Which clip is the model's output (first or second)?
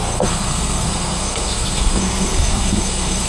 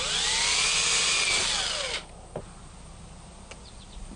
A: first